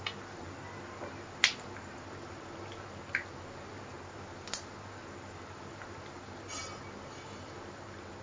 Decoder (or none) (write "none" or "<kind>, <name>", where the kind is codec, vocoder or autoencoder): none